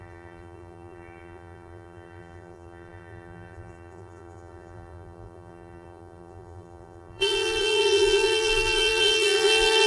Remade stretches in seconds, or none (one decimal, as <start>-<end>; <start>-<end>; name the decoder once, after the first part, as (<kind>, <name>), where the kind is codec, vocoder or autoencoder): 0.0-9.9 (vocoder, BigVGAN v2)